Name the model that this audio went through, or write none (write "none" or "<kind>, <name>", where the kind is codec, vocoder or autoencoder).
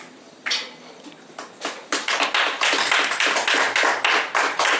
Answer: none